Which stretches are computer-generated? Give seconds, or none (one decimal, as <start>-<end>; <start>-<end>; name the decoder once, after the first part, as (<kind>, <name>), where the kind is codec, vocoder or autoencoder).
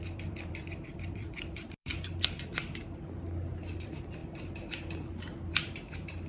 0.0-1.9 (vocoder, BigVGAN v2); 3.7-4.2; 5.5-6.3